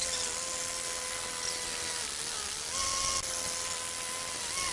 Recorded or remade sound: recorded